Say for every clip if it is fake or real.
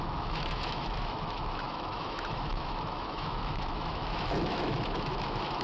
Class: fake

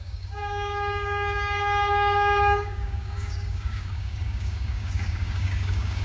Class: fake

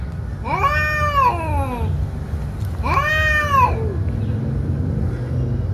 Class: real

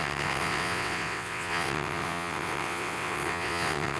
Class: fake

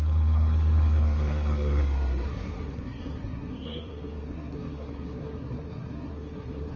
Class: fake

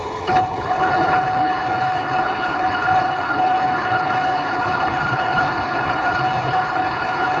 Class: fake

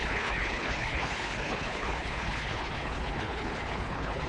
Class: fake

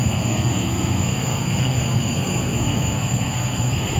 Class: fake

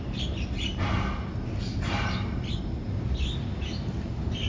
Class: real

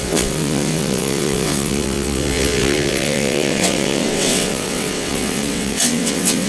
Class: fake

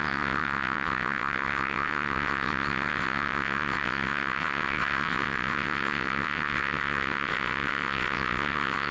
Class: fake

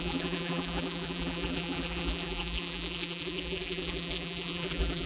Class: fake